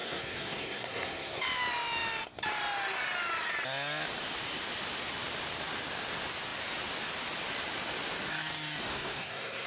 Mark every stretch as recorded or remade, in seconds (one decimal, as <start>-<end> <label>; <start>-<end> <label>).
0.0-1.4 remade; 1.4-8.9 recorded; 8.9-9.7 remade